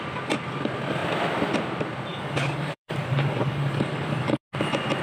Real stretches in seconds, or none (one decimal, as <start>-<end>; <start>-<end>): 0.0-2.1; 4.4-5.0